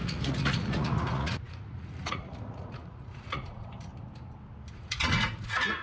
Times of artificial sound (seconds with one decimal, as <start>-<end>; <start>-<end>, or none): 0.0-3.9; 4.7-5.8